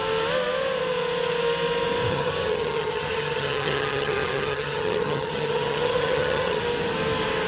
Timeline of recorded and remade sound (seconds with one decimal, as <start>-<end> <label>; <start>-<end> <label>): 0.0-2.1 recorded; 2.1-6.6 remade; 6.6-7.5 recorded